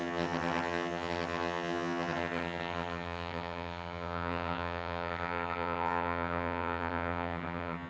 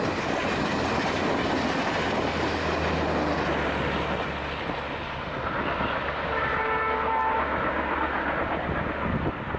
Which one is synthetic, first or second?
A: first